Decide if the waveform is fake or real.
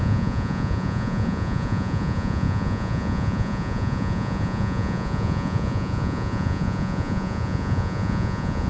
fake